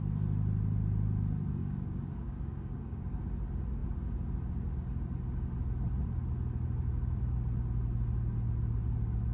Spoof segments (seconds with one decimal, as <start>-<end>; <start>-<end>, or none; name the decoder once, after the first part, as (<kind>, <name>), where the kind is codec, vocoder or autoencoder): 1.6-3.2 (codec, DAC)